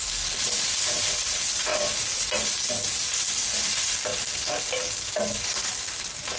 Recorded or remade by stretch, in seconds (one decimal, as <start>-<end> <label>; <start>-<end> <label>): 0.0-6.4 recorded